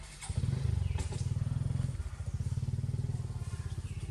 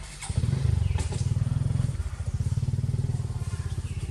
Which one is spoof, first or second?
second